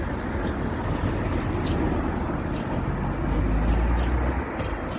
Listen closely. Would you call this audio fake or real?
real